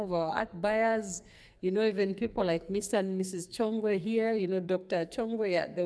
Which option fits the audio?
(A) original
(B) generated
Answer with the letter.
B